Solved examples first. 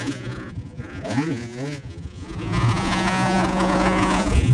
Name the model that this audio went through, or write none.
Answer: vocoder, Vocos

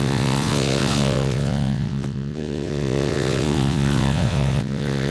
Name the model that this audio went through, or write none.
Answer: vocoder, WaveNeXt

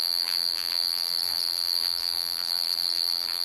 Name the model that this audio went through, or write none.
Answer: vocoder, BigVGAN v2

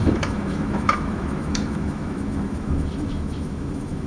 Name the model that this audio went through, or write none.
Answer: autoencoder, DAC-VAE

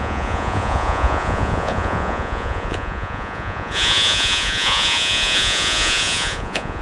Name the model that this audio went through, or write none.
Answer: vocoder, Vocos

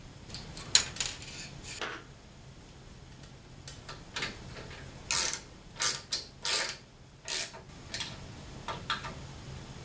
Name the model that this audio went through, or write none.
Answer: none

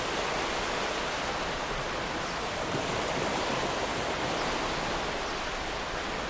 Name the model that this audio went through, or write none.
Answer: none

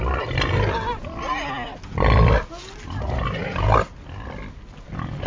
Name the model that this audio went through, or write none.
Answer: none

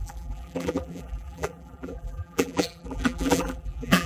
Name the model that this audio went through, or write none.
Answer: vocoder, BigVGAN v2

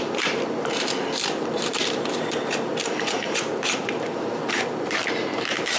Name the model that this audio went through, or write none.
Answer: vocoder, BigVGAN v2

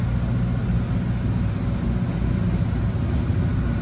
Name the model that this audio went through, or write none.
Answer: none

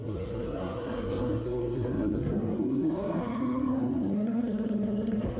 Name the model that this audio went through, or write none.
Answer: codec, SNAC